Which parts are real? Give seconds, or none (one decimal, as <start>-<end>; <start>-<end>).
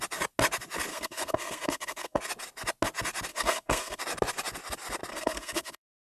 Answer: 0.0-0.9; 2.2-3.3; 4.0-5.1